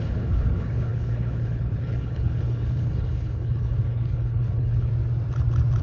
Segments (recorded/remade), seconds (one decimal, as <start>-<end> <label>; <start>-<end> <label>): 0.0-4.9 remade; 4.9-5.8 recorded